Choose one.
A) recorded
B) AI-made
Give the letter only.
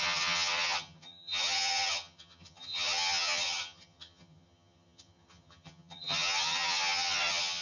B